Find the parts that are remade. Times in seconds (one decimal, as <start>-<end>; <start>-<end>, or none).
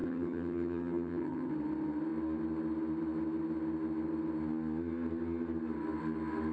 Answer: 0.0-1.5